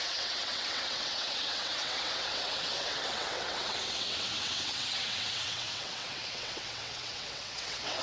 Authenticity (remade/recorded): remade